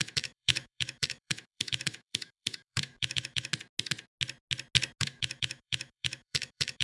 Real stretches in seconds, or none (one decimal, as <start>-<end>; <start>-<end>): 3.5-5.0